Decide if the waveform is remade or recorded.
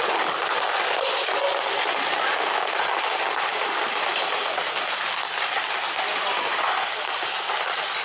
recorded